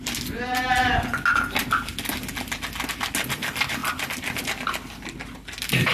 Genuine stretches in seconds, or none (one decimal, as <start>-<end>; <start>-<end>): 0.0-3.8; 4.4-5.9

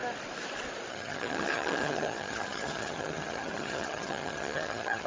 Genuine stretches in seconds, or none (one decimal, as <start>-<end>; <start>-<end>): 0.0-0.9

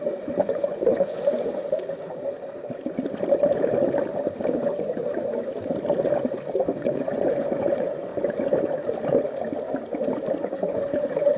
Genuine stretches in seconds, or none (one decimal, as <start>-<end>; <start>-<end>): 1.6-4.6; 5.0-6.6; 8.1-10.3